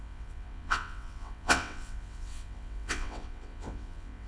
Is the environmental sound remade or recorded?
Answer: remade